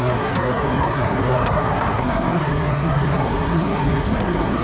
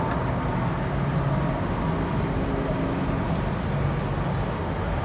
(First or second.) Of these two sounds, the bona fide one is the second